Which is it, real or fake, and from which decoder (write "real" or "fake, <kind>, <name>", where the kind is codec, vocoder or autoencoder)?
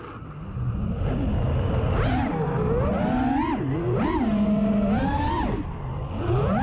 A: real